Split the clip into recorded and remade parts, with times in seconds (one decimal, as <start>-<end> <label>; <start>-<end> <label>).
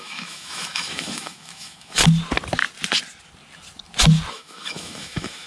0.0-2.0 remade; 2.0-4.3 recorded; 4.3-5.5 remade